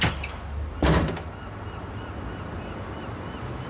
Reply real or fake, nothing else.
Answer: real